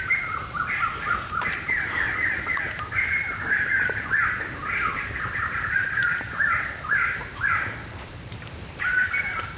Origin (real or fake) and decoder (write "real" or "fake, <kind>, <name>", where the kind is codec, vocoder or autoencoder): fake, vocoder, BigVGAN v2